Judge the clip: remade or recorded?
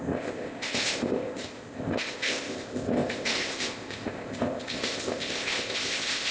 remade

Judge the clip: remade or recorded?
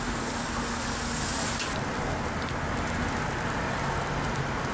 recorded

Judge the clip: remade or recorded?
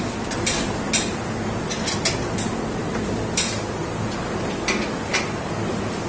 recorded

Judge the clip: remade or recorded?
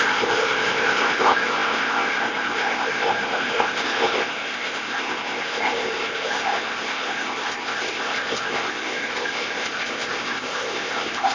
remade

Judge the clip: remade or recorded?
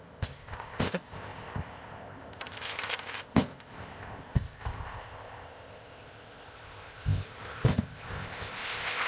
remade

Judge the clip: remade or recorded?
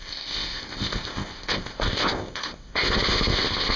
remade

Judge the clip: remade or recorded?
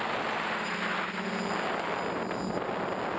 recorded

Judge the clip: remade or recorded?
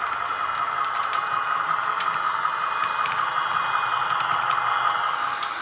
recorded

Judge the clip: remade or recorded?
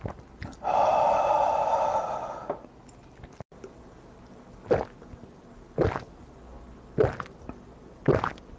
recorded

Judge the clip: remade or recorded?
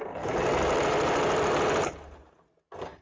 recorded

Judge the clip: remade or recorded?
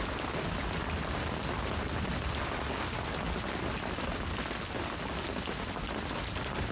recorded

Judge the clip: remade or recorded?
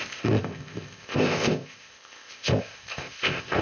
remade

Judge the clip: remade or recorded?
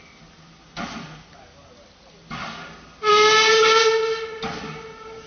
recorded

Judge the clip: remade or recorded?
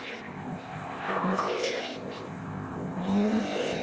remade